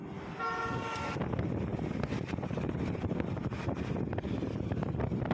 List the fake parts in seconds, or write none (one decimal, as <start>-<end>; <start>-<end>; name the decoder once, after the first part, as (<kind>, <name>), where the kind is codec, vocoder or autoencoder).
none